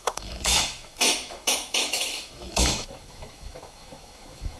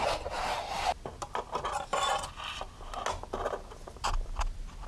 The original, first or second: second